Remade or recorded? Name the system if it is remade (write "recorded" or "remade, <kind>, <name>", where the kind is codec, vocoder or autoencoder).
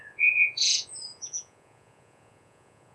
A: remade, vocoder, Vocos